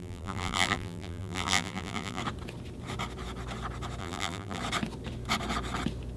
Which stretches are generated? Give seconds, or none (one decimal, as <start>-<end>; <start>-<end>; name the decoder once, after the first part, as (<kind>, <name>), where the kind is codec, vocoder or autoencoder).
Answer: 0.0-2.2 (vocoder, BigVGAN v2); 4.0-4.6